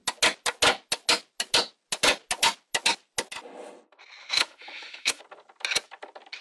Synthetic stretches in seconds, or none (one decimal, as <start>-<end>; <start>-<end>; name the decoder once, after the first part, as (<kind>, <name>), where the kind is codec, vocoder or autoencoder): 4.2-5.2 (autoencoder, DAC-VAE)